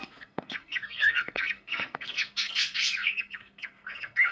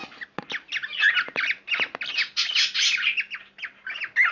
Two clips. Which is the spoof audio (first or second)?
first